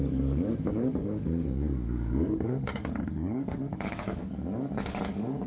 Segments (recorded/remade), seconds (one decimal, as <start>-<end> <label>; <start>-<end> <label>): 0.0-5.5 remade